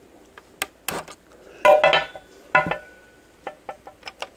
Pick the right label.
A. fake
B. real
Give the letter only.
B